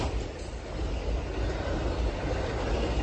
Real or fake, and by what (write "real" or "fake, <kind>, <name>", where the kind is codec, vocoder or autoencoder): real